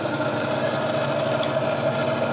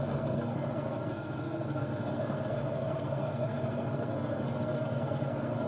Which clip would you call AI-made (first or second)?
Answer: second